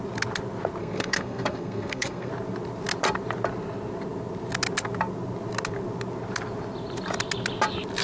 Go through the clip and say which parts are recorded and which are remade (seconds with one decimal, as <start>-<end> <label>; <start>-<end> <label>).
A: 0.0-0.8 recorded; 0.8-2.3 remade; 2.3-8.0 recorded